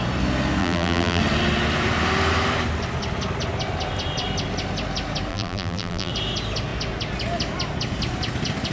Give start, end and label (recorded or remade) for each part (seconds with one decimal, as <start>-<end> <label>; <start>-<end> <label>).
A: 0.0-0.6 recorded; 0.6-1.2 remade; 1.2-5.3 recorded; 5.3-6.1 remade; 6.1-8.7 recorded